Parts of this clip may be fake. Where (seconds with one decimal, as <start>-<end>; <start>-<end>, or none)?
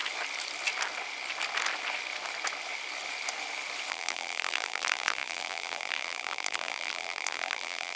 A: 3.9-8.0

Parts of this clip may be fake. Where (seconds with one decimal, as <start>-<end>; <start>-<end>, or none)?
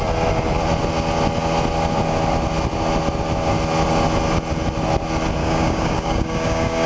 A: 5.4-6.9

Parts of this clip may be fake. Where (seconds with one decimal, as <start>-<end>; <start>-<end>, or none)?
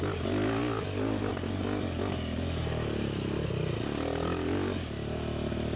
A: none